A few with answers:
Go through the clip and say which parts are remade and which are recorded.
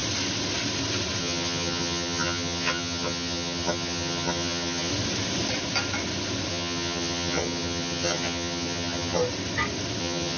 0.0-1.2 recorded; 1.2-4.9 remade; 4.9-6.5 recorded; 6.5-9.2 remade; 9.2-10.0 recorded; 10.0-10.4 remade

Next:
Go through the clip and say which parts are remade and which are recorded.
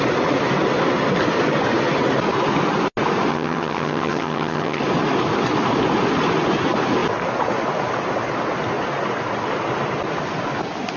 0.0-3.3 recorded; 3.3-4.8 remade; 4.8-11.0 recorded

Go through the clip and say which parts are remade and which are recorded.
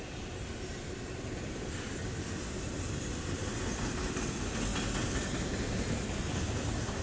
0.0-7.0 recorded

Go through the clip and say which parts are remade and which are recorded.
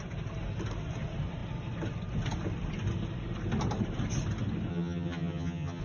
0.0-4.7 recorded; 4.7-5.8 remade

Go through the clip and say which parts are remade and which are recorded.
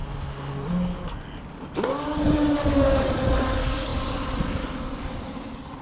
0.0-5.8 recorded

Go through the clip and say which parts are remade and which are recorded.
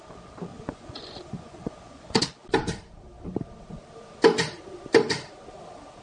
0.0-0.5 recorded; 0.5-2.2 remade; 2.2-6.0 recorded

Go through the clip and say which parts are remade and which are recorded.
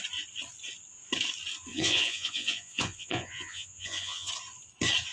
0.0-1.7 recorded; 1.7-4.3 remade; 4.3-5.1 recorded